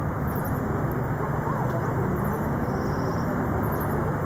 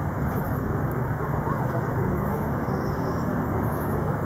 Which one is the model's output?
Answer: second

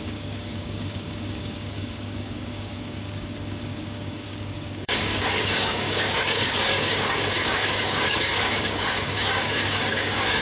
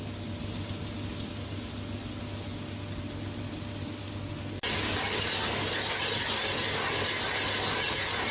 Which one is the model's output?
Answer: first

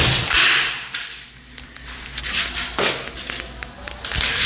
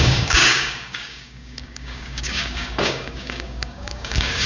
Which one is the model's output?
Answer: second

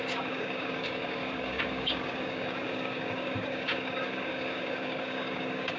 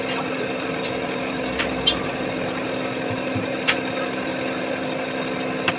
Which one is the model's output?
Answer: first